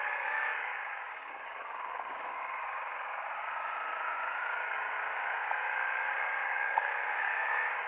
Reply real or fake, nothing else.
fake